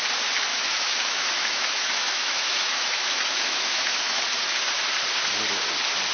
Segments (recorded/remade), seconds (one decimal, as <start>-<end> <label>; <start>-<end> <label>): 0.0-0.5 recorded; 0.5-4.2 remade; 4.2-6.1 recorded